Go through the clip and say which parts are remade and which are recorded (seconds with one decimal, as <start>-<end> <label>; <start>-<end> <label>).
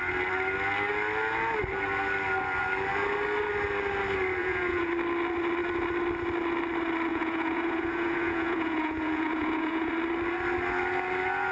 0.0-4.4 recorded; 4.4-4.9 remade; 4.9-7.1 recorded; 7.1-9.9 remade; 9.9-11.5 recorded